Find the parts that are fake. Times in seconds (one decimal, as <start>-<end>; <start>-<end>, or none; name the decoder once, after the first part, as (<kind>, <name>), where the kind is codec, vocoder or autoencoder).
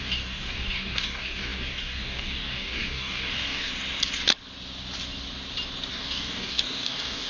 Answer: 0.0-3.7 (codec, DAC); 5.9-7.3